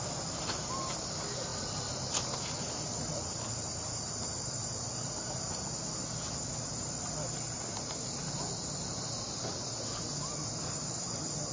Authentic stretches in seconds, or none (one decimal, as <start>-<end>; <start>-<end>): 0.0-11.5